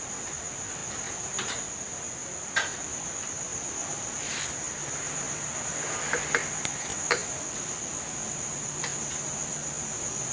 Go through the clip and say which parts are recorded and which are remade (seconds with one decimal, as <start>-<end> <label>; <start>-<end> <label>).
0.0-10.3 recorded